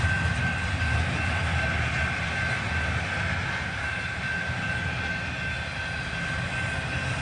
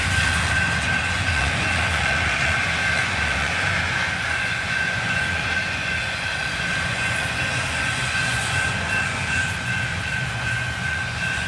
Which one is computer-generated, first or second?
second